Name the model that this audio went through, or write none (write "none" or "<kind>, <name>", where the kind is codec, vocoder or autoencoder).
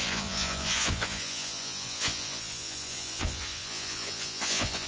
vocoder, Vocos